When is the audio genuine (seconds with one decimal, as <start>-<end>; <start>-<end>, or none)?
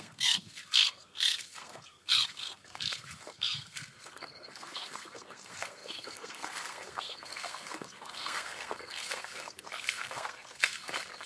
none